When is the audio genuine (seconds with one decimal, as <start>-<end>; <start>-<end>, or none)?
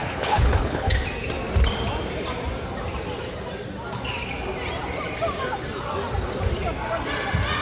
0.9-7.6